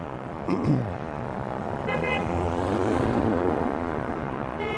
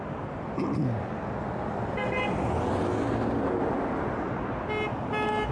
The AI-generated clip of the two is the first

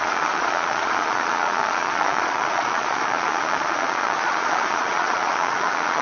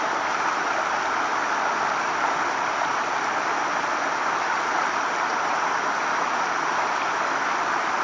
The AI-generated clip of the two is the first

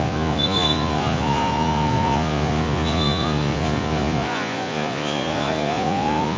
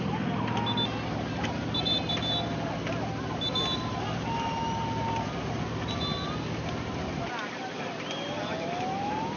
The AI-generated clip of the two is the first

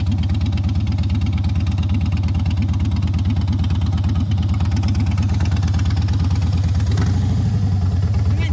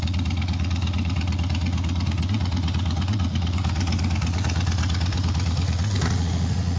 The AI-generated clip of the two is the second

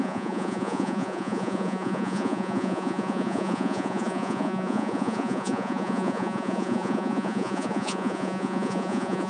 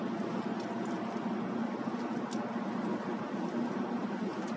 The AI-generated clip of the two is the first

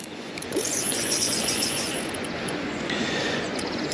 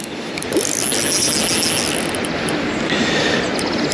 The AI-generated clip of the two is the first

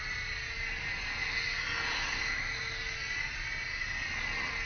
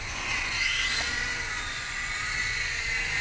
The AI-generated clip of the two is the second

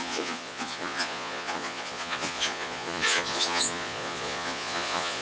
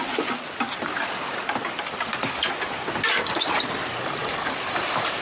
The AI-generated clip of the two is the first